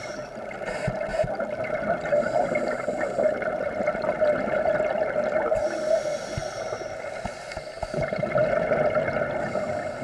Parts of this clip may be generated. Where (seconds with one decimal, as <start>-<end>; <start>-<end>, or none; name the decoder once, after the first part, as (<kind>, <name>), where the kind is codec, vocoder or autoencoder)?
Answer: none